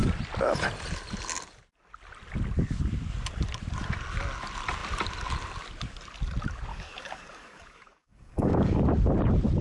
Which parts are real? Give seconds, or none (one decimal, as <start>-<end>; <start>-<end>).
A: 0.0-6.7; 8.8-9.6